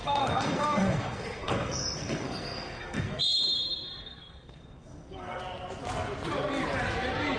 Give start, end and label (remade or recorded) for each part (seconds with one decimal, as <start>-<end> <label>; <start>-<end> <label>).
0.0-3.2 remade; 3.2-4.0 recorded; 4.0-5.4 remade; 5.4-7.4 recorded